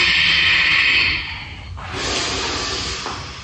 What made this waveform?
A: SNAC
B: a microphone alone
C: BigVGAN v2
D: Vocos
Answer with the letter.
B